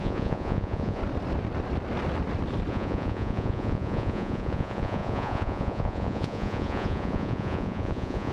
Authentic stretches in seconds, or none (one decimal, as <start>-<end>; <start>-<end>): 1.0-2.7